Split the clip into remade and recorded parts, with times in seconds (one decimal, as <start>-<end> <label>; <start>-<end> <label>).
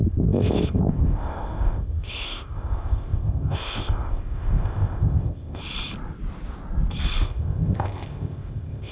0.0-5.6 remade; 5.6-7.2 recorded; 7.2-8.9 remade